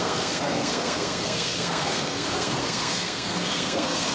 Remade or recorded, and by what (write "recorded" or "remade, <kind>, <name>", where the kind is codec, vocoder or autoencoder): remade, codec, SNAC